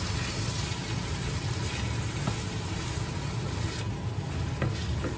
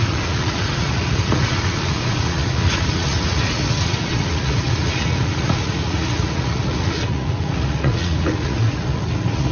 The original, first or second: first